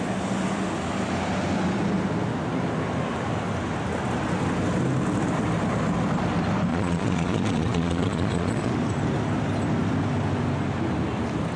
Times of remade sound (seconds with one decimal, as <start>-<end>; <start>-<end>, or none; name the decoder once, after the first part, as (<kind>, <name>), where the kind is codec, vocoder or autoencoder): 6.7-8.7 (vocoder, Vocos)